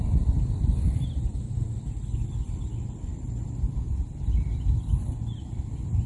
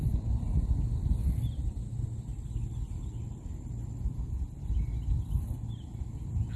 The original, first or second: second